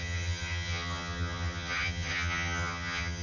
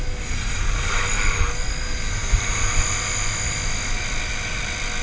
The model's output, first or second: first